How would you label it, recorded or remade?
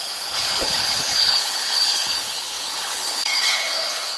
remade